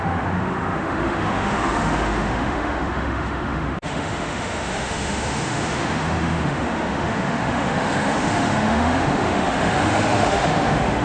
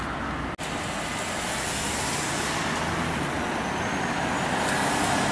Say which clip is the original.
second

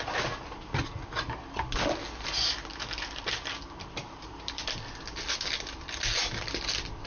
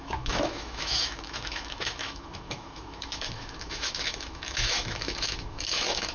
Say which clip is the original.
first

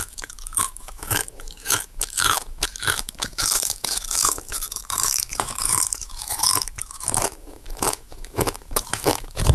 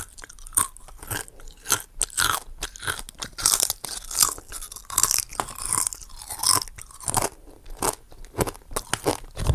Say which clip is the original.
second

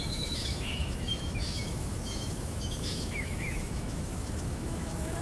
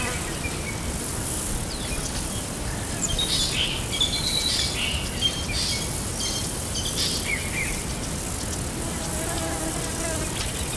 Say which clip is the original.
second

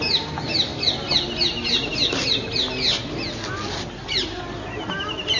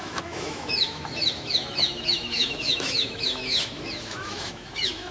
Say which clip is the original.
first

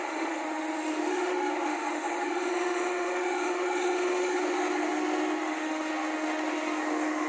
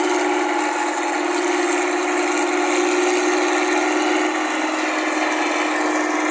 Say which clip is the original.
second